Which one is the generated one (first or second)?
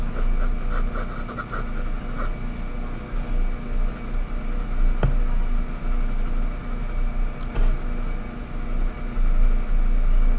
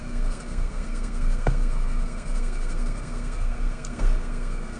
second